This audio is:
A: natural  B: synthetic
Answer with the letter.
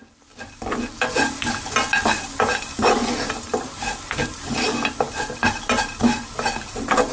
A